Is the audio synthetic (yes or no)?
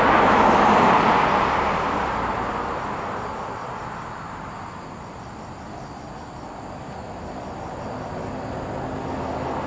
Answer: no